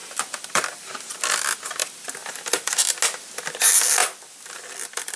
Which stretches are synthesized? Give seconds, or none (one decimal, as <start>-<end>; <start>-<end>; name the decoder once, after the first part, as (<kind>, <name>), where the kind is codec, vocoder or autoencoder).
0.0-0.9 (vocoder, BigVGAN v2); 1.8-2.7; 4.0-5.2